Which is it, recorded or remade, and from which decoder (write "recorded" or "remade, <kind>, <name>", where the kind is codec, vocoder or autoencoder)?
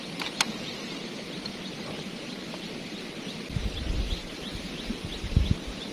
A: remade, vocoder, BigVGAN v2